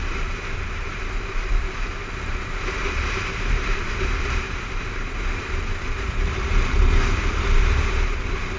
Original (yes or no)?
no